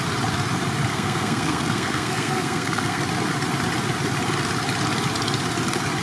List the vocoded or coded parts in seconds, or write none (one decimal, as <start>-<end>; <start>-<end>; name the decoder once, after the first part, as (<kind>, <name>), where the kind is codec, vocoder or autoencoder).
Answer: 0.9-3.0 (codec, SNAC)